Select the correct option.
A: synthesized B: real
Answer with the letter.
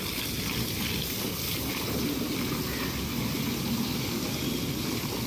B